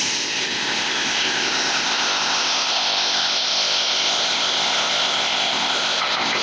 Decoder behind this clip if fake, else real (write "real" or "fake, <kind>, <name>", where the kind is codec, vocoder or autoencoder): fake, codec, ZipCodec